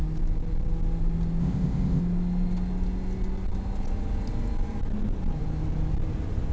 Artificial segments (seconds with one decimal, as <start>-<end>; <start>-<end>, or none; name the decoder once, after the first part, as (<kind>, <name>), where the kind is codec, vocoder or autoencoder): 1.4-2.0 (codec, ZipCodec)